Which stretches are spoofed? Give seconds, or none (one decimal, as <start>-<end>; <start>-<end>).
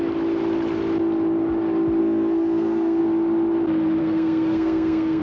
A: 2.0-3.0; 4.0-5.2